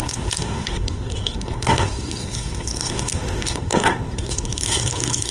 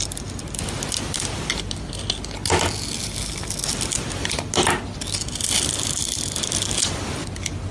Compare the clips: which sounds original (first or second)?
second